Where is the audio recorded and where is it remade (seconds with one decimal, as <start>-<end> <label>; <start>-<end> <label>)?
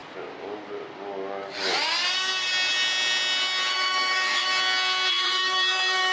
0.0-3.7 recorded; 3.7-4.5 remade; 4.5-5.1 recorded; 5.1-6.1 remade